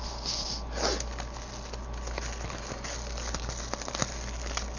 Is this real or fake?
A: real